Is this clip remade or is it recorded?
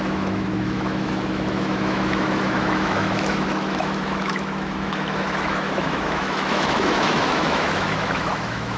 remade